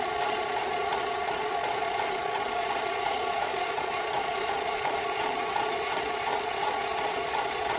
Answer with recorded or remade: remade